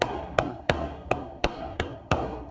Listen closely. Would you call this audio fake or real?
fake